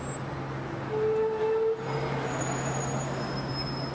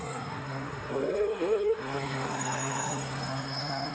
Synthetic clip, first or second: second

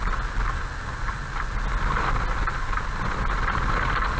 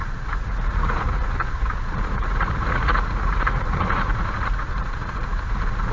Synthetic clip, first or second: second